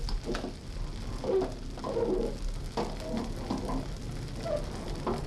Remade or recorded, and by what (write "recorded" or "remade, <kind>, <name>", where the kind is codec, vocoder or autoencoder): recorded